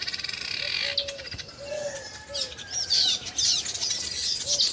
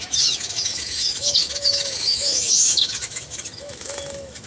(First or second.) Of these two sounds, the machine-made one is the second